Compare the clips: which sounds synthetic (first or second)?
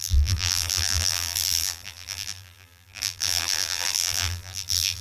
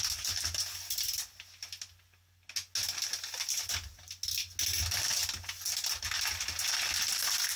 first